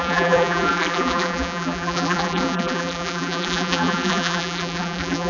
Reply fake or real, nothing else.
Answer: fake